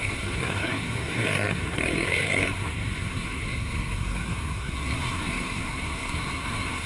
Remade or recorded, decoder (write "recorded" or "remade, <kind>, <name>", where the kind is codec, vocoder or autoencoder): remade, codec, SNAC